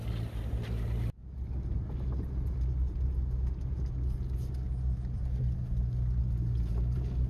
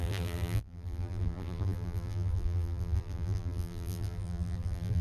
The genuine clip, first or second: first